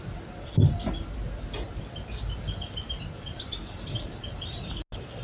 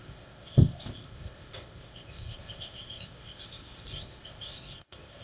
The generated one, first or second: second